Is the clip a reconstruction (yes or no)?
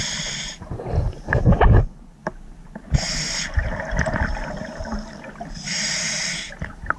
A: no